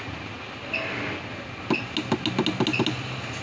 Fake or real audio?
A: real